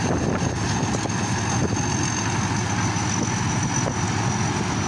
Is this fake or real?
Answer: real